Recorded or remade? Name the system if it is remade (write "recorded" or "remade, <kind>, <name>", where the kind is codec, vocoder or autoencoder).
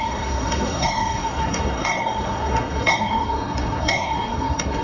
remade, codec, SNAC